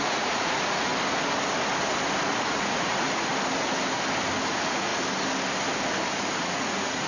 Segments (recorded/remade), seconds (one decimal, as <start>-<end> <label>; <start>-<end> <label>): 0.0-0.9 remade; 0.9-2.3 recorded; 2.3-3.3 remade; 3.3-4.5 recorded; 4.5-4.9 remade; 4.9-6.3 recorded; 6.3-7.1 remade